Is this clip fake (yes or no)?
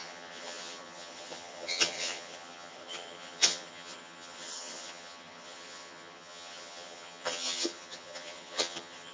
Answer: yes